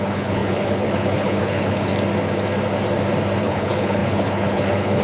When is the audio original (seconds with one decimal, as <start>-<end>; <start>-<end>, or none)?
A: 1.9-3.4